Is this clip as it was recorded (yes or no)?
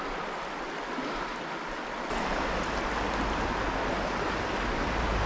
yes